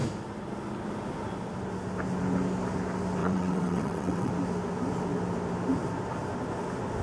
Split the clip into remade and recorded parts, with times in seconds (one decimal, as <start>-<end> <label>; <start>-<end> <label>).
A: 0.0-3.2 recorded; 3.2-4.3 remade; 4.3-7.0 recorded